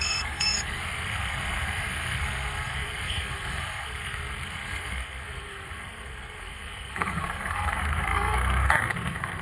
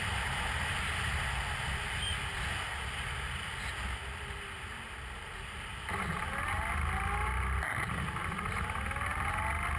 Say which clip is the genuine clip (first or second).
second